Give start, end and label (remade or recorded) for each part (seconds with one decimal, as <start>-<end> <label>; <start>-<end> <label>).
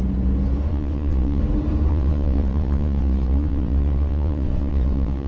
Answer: 0.0-0.7 recorded; 0.7-1.4 remade; 1.4-1.9 recorded; 1.9-5.3 remade